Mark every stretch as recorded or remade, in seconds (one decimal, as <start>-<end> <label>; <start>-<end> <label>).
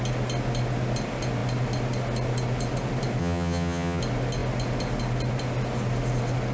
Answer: 0.0-3.2 recorded; 3.2-4.0 remade; 4.0-6.5 recorded